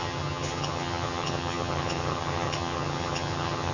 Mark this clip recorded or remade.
remade